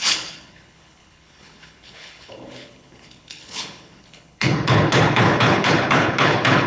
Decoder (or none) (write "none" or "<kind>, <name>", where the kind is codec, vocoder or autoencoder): codec, HILCodec